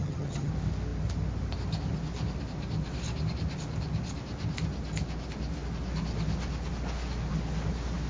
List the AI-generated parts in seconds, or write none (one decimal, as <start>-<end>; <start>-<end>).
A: 0.0-0.5